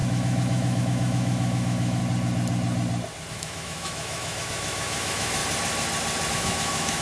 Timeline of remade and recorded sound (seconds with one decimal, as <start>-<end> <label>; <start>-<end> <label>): 0.0-2.0 remade; 2.0-3.3 recorded; 3.3-5.4 remade; 5.4-6.3 recorded; 6.3-7.0 remade